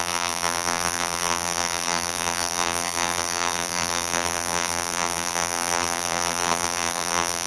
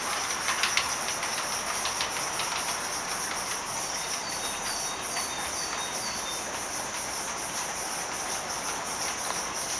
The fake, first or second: first